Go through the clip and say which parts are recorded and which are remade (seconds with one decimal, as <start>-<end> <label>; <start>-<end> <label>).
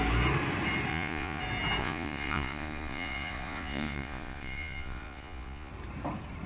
0.0-0.9 recorded; 0.9-1.4 remade; 1.4-1.8 recorded; 1.8-5.7 remade; 5.7-6.5 recorded